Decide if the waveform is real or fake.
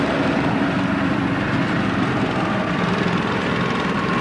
real